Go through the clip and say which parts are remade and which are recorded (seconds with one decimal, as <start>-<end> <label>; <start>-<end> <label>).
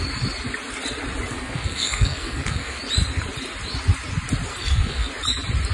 0.0-1.3 recorded; 1.3-2.8 remade; 2.8-4.5 recorded; 4.5-5.1 remade; 5.1-5.7 recorded